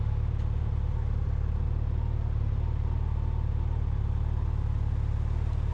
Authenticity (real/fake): real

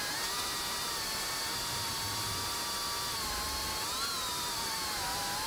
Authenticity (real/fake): real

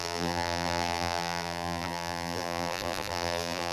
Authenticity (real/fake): fake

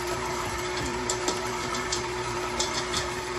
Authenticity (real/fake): fake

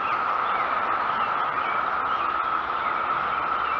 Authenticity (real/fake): real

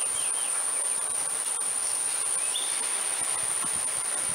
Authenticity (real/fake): real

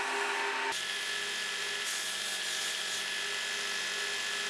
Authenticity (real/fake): real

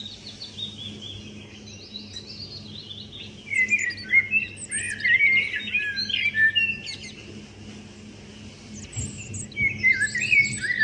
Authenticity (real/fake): real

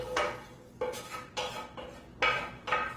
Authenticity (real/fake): real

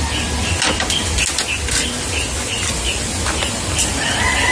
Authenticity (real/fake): real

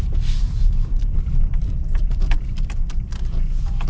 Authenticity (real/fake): fake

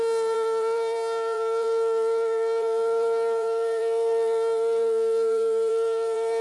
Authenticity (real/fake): fake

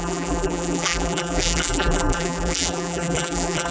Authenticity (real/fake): fake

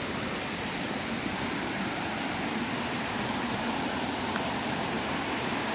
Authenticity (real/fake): fake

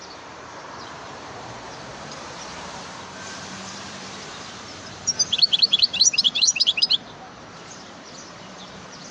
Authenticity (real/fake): fake